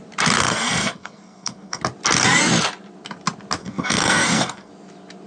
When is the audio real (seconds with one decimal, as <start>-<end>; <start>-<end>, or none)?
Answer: 0.0-0.4; 1.8-3.6; 4.7-5.3